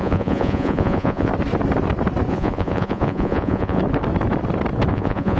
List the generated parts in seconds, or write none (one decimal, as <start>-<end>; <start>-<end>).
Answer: 0.0-1.3; 2.3-3.8; 4.9-5.4